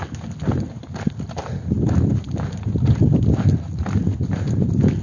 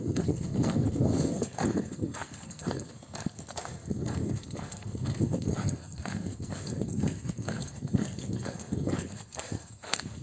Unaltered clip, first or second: first